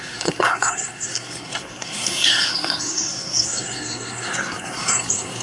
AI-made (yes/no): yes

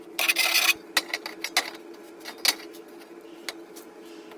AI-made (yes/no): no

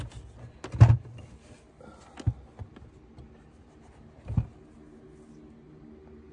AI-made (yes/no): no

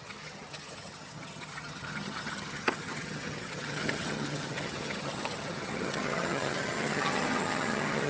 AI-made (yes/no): yes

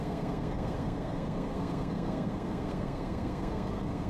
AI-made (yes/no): yes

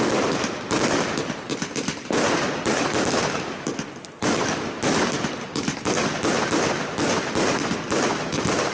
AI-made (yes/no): no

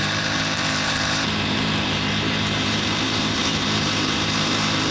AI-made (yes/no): yes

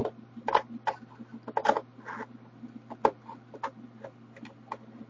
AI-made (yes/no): no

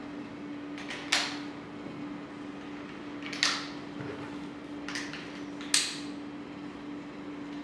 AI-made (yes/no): no